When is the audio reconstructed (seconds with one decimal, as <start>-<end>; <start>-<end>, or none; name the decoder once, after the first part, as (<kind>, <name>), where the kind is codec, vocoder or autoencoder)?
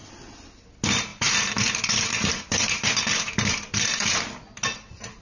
1.1-4.2 (vocoder, BigVGAN v2)